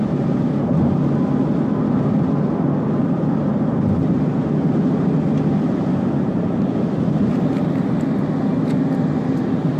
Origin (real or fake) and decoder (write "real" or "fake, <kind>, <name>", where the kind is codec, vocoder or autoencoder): real